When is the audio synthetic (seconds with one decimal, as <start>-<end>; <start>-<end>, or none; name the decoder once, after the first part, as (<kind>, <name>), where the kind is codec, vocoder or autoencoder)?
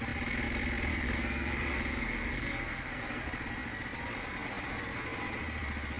0.9-3.2 (codec, SNAC)